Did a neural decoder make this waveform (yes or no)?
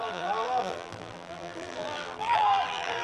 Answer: yes